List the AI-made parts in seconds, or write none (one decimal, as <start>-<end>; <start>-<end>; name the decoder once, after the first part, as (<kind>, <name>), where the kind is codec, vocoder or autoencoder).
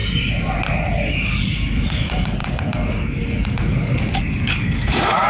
1.1-5.3 (codec, DAC)